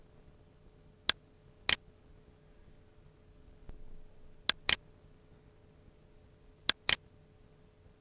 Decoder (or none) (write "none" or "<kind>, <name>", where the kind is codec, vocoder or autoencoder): none